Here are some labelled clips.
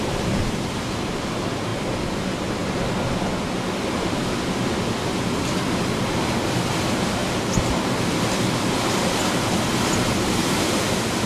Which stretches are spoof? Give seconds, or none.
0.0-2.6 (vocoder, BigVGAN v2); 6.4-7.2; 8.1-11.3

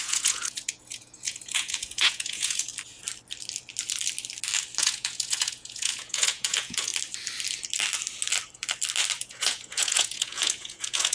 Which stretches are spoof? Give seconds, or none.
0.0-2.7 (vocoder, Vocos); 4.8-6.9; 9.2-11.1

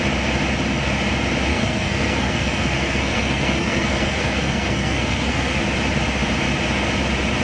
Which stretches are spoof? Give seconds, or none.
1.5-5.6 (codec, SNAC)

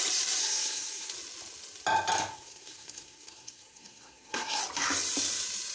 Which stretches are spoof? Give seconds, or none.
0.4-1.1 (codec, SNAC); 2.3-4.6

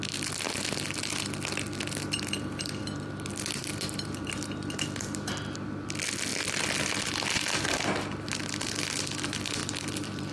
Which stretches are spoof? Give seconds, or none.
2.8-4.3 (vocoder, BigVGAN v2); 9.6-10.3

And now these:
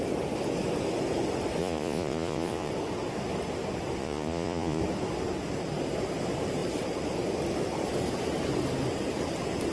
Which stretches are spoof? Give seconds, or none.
1.6-2.7 (vocoder, Vocos); 4.0-4.8

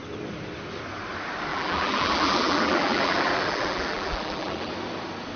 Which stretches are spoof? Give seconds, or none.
1.5-4.7 (vocoder, BigVGAN v2)